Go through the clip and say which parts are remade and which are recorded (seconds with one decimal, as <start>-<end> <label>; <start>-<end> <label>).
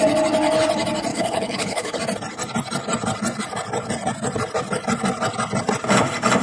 0.0-1.1 recorded; 1.1-2.0 remade; 2.0-6.4 recorded